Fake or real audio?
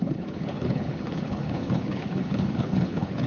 fake